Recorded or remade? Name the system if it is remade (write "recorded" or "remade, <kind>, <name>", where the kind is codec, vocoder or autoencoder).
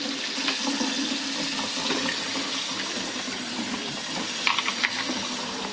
recorded